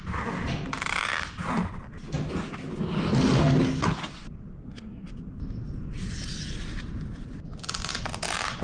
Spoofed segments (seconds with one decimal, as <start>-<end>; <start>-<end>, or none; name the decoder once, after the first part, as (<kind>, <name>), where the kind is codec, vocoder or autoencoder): 4.6-5.1 (codec, SNAC)